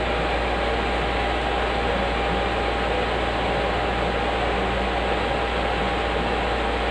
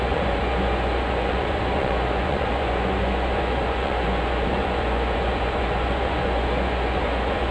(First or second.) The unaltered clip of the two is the first